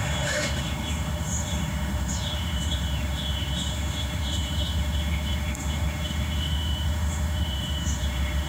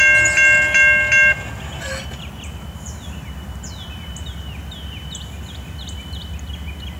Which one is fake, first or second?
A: first